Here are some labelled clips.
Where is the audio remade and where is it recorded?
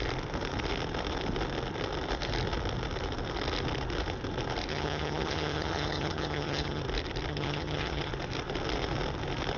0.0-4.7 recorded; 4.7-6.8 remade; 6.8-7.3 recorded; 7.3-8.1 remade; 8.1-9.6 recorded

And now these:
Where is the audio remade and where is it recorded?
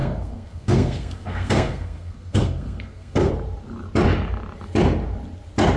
0.0-3.3 remade; 3.3-5.8 recorded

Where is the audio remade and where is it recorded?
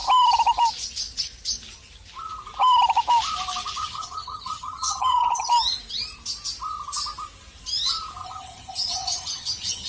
0.0-3.8 recorded; 3.8-5.5 remade; 5.5-8.2 recorded; 8.2-9.9 remade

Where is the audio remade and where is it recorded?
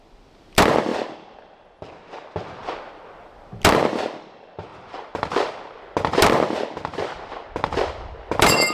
0.0-4.7 recorded; 4.7-5.7 remade; 5.7-8.7 recorded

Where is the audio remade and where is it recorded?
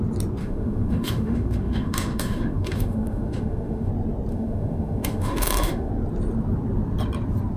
0.0-0.4 recorded; 0.4-3.9 remade; 3.9-4.3 recorded; 4.3-5.9 remade; 5.9-7.6 recorded